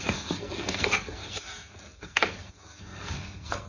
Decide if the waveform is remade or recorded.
remade